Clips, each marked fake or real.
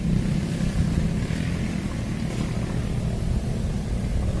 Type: real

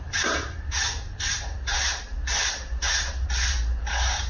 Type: fake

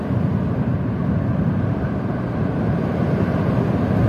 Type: real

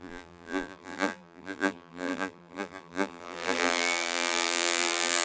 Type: fake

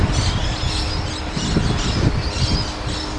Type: real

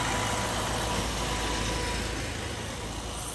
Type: real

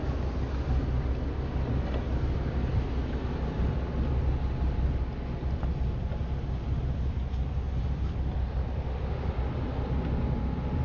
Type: real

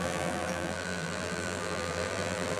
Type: fake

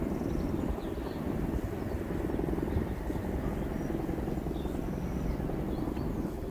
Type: real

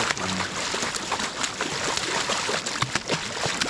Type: real